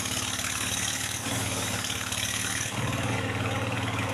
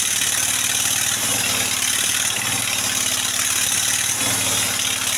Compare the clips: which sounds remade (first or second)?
first